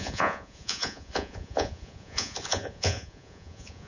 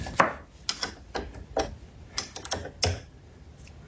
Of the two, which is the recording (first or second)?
second